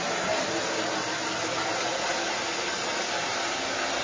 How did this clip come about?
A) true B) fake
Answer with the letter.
A